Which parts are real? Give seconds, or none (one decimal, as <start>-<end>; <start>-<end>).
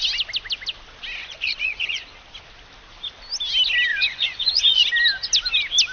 0.0-1.2; 2.0-3.9; 4.8-5.9